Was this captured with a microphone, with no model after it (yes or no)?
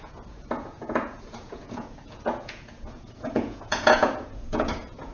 no